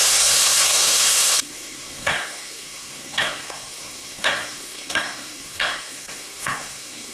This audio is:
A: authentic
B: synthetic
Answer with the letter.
B